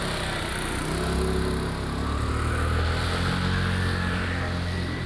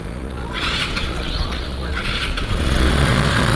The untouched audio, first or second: first